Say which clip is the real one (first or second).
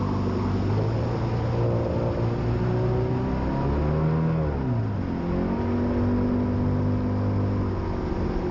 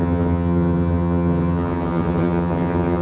first